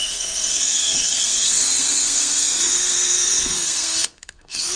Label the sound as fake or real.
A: fake